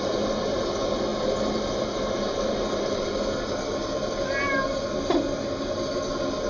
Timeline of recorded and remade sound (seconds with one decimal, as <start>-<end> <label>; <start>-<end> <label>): 0.0-6.5 recorded